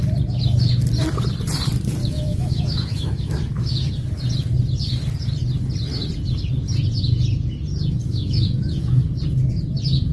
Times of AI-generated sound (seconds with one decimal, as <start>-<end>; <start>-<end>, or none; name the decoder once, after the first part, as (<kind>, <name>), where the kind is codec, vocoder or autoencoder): 2.0-3.9 (autoencoder, DAC-VAE); 8.0-9.0